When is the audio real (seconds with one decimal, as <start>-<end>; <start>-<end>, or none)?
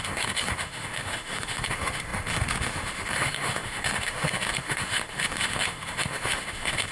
none